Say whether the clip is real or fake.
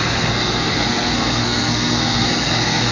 fake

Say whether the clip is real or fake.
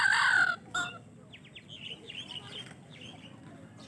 real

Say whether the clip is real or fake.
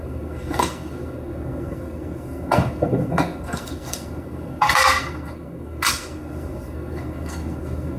fake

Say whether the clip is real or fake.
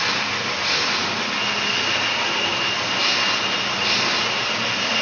real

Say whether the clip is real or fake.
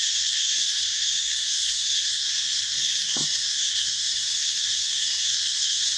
fake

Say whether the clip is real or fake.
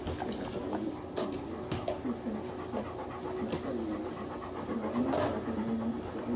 real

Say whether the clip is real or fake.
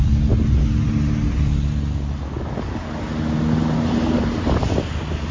real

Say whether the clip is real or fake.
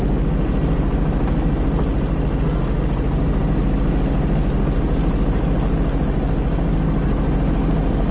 real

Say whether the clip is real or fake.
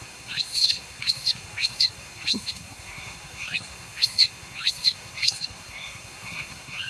fake